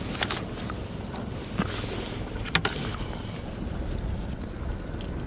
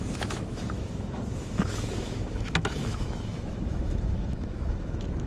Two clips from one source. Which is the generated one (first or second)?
second